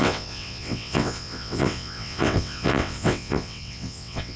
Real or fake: fake